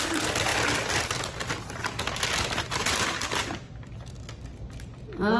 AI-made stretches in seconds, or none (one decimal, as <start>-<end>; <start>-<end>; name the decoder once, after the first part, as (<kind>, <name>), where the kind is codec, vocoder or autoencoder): 2.8-3.4 (vocoder, BigVGAN v2)